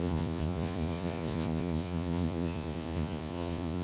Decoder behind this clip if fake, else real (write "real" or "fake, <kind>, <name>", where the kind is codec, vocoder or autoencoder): fake, vocoder, Vocos